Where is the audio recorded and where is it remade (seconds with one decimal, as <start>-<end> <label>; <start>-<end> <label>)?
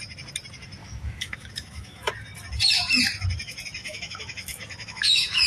0.0-0.8 recorded; 0.8-2.1 remade; 2.1-3.8 recorded; 3.8-5.5 remade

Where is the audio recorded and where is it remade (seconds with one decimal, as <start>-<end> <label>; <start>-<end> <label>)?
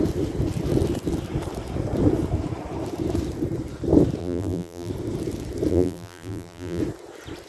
0.0-4.2 recorded; 4.2-4.9 remade; 4.9-5.7 recorded; 5.7-6.8 remade; 6.8-7.5 recorded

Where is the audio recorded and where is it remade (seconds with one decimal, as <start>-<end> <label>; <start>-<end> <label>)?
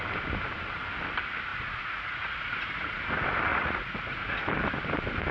0.0-1.5 recorded; 1.5-3.0 remade; 3.0-3.5 recorded; 3.5-4.3 remade; 4.3-5.3 recorded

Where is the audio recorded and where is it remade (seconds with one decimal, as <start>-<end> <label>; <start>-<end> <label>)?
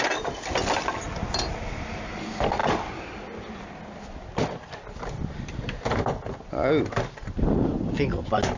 0.0-8.6 recorded